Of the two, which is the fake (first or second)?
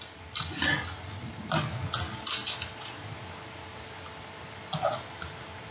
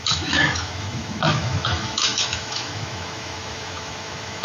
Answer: second